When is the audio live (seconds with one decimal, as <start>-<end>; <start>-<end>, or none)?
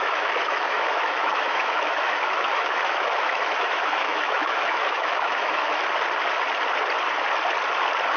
5.8-8.2